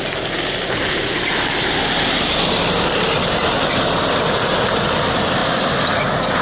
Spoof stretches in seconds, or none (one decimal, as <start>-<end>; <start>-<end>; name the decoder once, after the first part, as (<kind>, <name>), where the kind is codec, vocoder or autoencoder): none